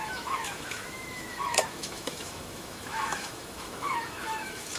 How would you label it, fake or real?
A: fake